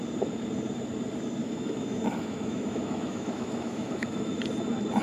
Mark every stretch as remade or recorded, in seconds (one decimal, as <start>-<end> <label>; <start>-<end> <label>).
0.0-1.4 recorded; 1.4-4.4 remade; 4.4-5.0 recorded